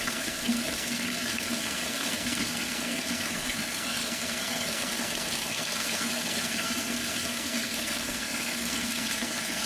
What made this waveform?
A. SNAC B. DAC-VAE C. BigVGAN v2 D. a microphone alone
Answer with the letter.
A